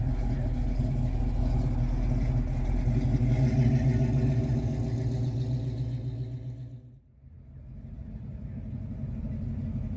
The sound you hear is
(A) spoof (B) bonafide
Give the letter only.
B